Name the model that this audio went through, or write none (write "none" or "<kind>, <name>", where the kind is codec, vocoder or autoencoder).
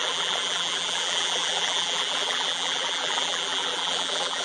vocoder, BigVGAN v2